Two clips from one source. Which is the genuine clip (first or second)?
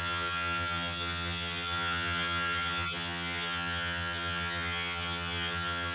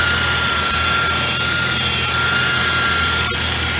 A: second